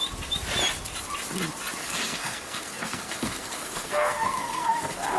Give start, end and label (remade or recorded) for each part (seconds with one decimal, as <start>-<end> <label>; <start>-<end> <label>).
0.0-1.8 recorded; 1.8-5.2 remade